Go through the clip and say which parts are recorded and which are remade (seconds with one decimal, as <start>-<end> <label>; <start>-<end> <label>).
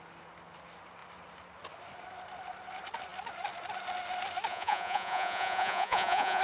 0.0-4.5 recorded; 4.5-6.4 remade